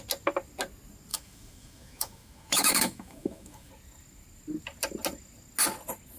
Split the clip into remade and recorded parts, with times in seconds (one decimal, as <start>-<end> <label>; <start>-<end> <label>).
0.0-1.1 recorded; 1.1-3.7 remade; 3.7-6.2 recorded

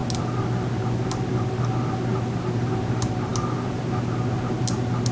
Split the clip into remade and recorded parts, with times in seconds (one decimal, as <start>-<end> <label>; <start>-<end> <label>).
0.0-5.1 recorded

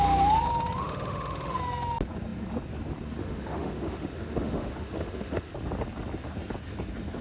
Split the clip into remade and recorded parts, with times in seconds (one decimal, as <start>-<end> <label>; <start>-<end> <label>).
0.0-0.8 recorded; 0.8-1.6 remade; 1.6-3.2 recorded; 3.2-5.5 remade; 5.5-7.2 recorded

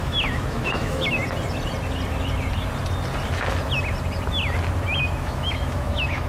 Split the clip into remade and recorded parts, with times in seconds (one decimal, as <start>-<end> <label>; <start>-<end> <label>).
0.0-1.2 remade; 1.2-5.0 recorded; 5.0-6.3 remade

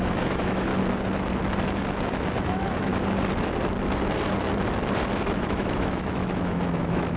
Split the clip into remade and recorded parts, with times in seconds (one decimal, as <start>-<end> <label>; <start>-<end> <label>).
0.0-0.7 remade; 0.7-2.4 recorded; 2.4-2.9 remade; 2.9-5.2 recorded; 5.2-7.2 remade

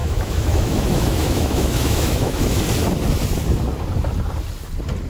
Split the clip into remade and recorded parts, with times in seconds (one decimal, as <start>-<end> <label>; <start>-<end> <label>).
0.0-2.6 remade; 2.6-5.1 recorded